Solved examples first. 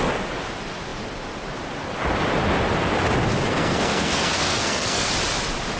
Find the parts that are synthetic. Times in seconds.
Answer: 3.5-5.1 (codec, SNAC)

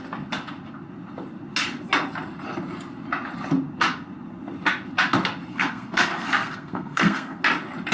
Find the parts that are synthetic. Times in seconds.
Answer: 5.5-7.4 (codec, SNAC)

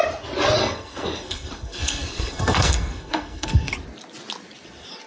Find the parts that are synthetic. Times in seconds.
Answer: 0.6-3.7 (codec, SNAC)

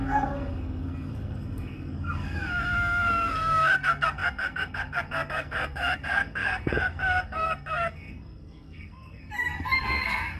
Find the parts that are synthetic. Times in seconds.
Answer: 0.0-10.4 (codec, SNAC)

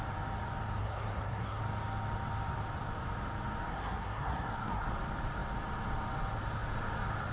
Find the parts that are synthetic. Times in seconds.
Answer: 0.8-1.6 (codec, SNAC); 3.7-4.9